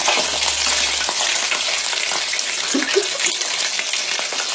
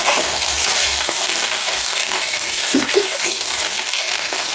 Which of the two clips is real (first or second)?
first